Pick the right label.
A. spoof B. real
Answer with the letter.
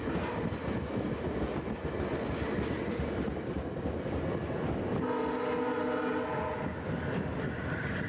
B